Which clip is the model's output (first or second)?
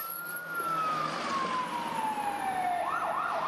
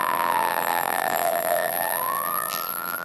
second